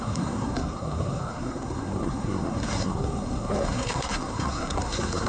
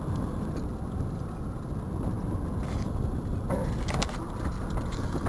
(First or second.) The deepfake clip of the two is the first